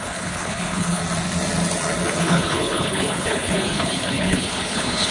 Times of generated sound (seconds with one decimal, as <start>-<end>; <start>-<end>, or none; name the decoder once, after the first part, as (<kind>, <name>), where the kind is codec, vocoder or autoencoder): 0.0-1.0 (codec, HILCodec); 2.1-5.1